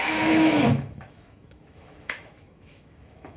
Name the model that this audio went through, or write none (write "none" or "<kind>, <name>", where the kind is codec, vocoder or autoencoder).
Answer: autoencoder, DAC-VAE